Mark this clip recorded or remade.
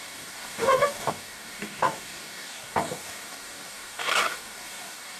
remade